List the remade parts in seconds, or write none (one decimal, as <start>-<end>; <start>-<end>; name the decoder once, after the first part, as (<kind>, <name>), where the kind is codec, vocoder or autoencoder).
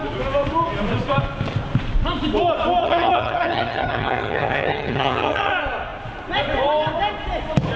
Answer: 2.8-5.5 (vocoder, HiFi-GAN)